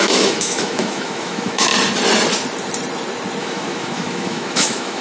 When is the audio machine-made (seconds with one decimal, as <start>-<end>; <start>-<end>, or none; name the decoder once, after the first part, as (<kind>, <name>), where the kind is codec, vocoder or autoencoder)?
0.0-1.7 (autoencoder, DAC-VAE); 3.4-5.0